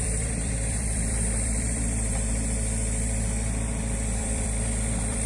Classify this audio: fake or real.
fake